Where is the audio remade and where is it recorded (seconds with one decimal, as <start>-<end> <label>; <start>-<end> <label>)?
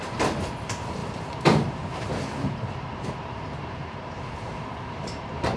0.0-5.6 remade